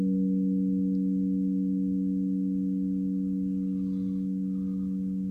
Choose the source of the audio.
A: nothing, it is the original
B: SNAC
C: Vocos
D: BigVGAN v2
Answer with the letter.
A